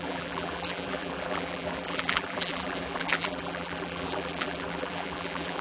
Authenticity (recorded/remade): remade